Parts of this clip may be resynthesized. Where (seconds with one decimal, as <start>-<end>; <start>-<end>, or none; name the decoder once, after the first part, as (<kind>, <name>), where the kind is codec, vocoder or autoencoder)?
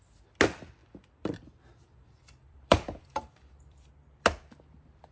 0.8-3.9 (vocoder, BigVGAN v2)